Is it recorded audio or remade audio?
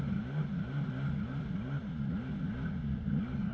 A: recorded